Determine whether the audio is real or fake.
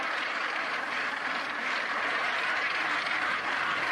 real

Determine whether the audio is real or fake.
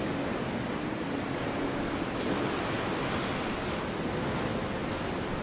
real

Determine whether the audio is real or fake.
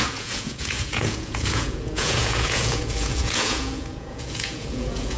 fake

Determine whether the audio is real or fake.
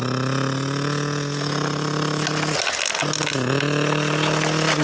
real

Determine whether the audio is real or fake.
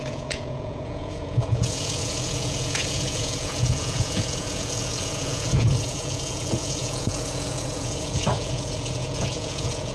fake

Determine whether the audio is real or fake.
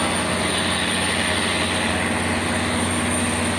real